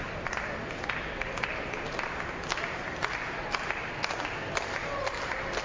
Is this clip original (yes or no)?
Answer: yes